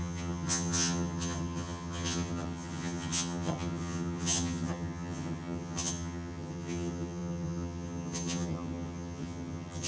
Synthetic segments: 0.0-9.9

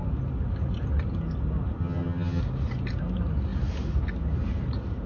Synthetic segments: 1.8-2.4

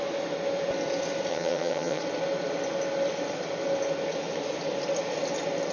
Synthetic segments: 1.3-2.0

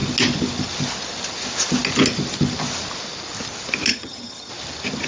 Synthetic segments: 3.9-4.5

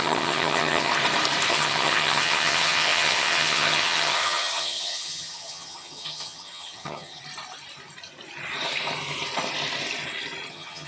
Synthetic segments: 0.0-0.9; 1.5-7.2; 10.5-10.9

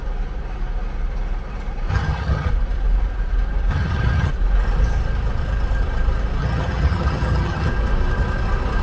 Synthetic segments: 1.9-2.5; 3.7-4.3; 6.4-7.7